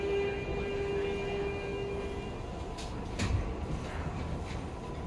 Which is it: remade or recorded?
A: recorded